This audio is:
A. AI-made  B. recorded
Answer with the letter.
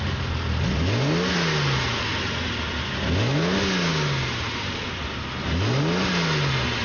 B